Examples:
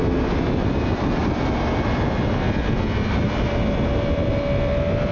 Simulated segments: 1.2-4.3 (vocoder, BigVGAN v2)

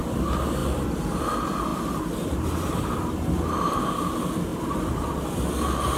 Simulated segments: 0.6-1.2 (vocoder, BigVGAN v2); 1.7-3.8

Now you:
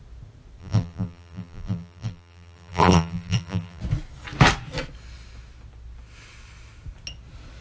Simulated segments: 0.6-3.8 (vocoder, BigVGAN v2)

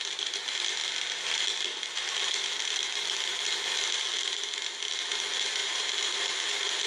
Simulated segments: 5.6-6.4 (vocoder, BigVGAN v2)

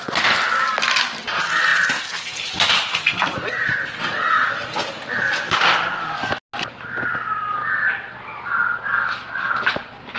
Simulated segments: none

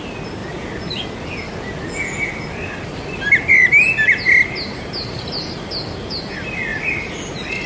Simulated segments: 6.7-7.3 (vocoder, BigVGAN v2)

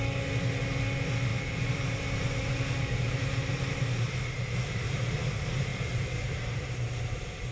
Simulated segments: 1.3-2.0 (vocoder, BigVGAN v2); 2.4-5.0; 5.7-7.5

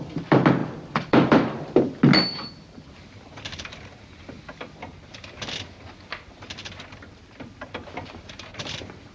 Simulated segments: 0.6-1.7 (vocoder, BigVGAN v2); 2.3-2.9; 8.5-9.1